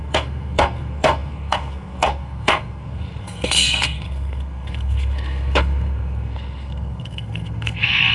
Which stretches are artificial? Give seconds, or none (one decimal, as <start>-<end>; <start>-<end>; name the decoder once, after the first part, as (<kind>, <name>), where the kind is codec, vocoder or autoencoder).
0.0-8.1 (codec, SNAC)

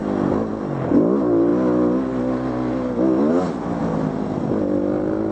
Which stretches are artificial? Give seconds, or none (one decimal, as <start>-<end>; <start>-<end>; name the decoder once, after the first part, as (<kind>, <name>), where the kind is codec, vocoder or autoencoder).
none

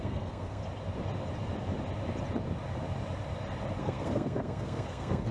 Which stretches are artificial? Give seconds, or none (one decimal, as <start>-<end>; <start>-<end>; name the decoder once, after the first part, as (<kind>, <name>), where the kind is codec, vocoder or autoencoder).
0.0-0.6 (codec, SNAC); 3.8-5.3

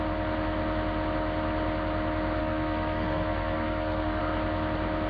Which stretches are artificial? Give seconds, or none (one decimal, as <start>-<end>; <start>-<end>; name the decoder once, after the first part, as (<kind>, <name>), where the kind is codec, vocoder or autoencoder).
2.4-4.2 (codec, SNAC)

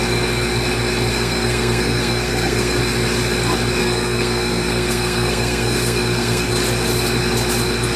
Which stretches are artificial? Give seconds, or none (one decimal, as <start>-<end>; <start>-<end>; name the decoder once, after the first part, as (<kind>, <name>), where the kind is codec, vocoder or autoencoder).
1.1-2.8 (codec, SNAC); 3.8-6.5

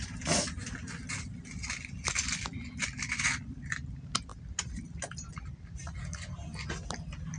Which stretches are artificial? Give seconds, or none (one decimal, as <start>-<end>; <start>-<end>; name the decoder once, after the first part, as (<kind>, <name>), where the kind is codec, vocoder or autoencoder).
none

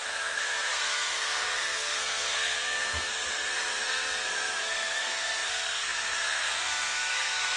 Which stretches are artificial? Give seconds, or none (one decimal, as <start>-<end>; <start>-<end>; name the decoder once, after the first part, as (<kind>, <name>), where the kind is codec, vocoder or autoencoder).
0.0-7.6 (codec, SNAC)

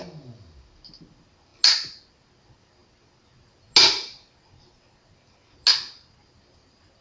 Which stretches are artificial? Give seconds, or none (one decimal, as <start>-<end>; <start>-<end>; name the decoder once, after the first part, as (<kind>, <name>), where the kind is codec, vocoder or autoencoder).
none